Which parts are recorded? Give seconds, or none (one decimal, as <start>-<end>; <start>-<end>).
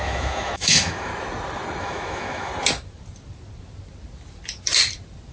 1.1-1.8; 2.5-5.3